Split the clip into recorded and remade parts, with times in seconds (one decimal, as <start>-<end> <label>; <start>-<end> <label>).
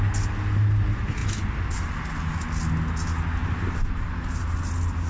0.0-3.4 recorded; 3.4-4.4 remade; 4.4-5.1 recorded